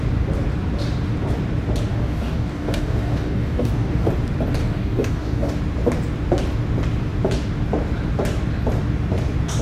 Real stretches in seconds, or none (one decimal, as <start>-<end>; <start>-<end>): 0.0-1.9; 4.1-4.6; 5.6-9.6